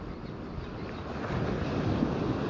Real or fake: real